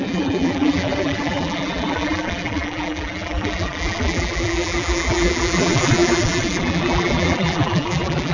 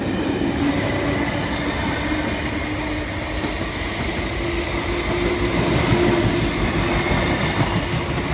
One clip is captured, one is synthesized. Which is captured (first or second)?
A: second